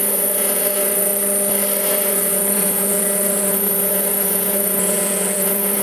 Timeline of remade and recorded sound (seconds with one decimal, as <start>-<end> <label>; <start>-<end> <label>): 0.0-1.1 remade; 1.1-1.8 recorded; 1.8-5.8 remade